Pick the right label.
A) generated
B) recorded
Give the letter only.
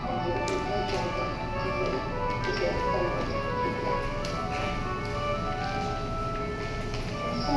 B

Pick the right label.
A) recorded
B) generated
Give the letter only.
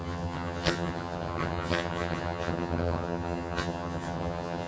B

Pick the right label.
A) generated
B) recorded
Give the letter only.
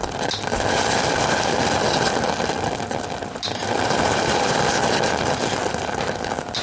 B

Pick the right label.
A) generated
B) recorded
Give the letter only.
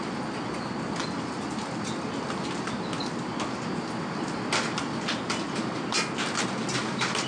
B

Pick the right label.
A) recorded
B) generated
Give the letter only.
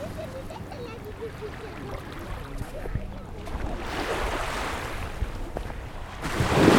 A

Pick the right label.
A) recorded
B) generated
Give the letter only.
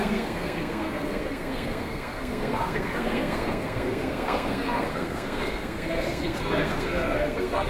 B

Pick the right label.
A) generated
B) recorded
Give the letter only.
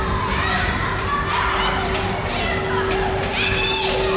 B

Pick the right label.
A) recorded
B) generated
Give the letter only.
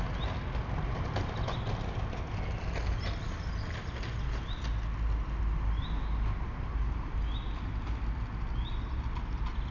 A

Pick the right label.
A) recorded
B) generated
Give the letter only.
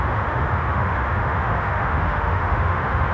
B